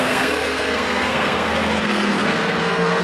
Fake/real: fake